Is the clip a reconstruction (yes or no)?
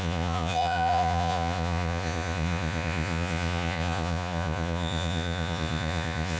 yes